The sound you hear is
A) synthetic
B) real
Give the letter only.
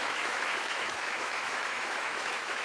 A